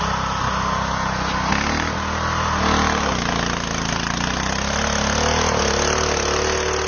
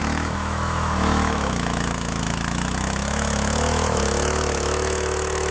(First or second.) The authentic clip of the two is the first